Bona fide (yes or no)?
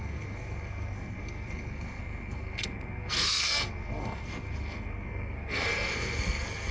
no